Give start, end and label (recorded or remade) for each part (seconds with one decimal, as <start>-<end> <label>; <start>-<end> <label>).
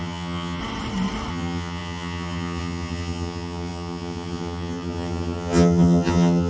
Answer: 0.0-0.6 remade; 0.6-1.3 recorded; 1.3-6.5 remade